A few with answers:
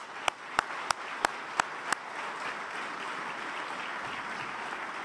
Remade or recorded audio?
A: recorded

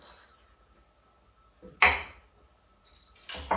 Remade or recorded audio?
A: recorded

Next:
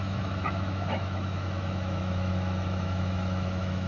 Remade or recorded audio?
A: remade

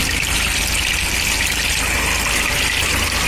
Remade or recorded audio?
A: recorded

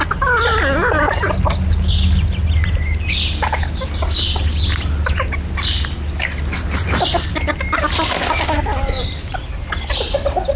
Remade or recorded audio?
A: recorded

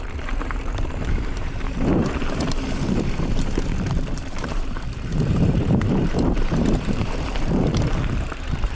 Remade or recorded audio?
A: remade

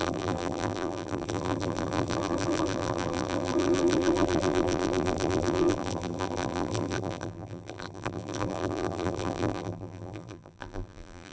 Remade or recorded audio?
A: remade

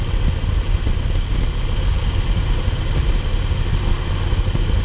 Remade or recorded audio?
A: recorded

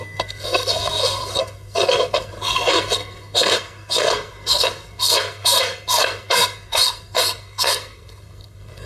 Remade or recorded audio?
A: remade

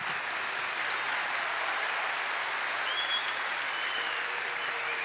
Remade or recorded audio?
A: recorded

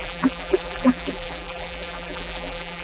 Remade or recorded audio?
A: remade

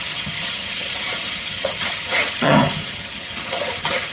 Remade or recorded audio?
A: remade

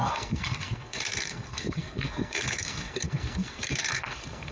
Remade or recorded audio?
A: remade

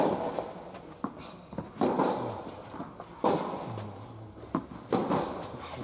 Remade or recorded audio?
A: recorded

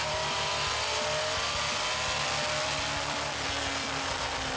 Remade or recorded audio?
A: recorded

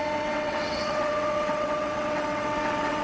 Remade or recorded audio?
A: remade